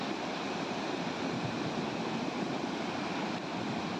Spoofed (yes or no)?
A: no